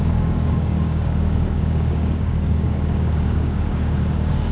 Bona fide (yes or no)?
no